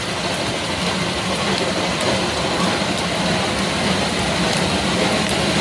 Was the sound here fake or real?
real